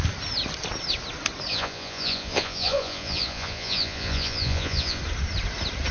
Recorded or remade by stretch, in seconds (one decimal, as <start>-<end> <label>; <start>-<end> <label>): 0.0-1.5 recorded; 1.5-5.0 remade; 5.0-5.9 recorded